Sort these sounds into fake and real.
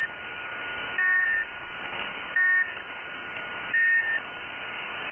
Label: fake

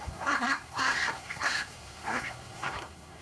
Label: fake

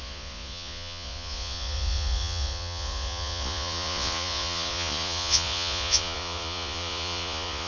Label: fake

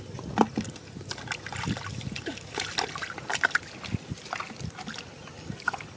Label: real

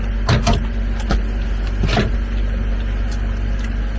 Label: real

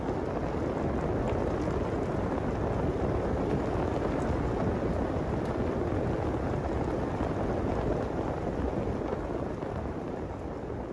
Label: real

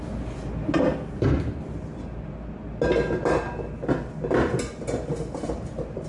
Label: real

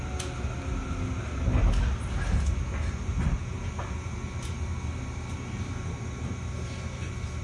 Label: real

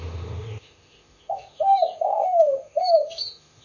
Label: fake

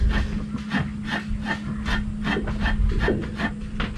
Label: real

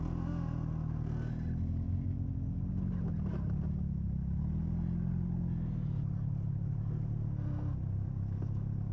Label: real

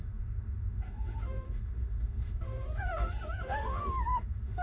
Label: fake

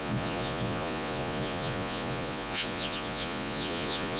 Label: fake